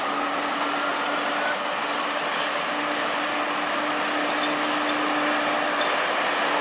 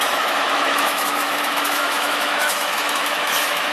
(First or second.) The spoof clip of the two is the second